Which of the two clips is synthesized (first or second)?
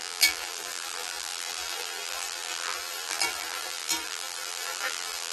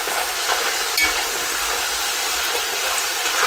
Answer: first